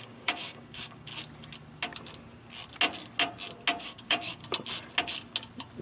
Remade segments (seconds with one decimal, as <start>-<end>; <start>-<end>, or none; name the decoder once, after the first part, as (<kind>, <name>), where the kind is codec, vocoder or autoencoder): 0.0-1.1 (codec, DAC); 3.8-4.4